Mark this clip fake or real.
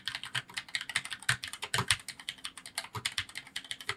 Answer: real